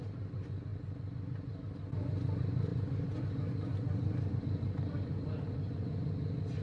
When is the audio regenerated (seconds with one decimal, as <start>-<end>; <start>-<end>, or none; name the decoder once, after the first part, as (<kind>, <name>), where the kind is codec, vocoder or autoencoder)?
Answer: none